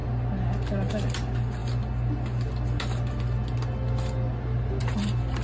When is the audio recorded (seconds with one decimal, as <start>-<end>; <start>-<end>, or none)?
0.0-5.4